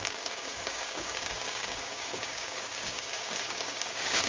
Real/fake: fake